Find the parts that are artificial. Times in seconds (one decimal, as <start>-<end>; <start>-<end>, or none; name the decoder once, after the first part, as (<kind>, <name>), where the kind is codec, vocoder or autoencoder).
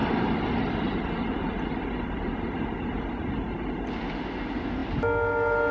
none